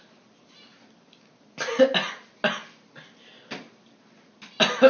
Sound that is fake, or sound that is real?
real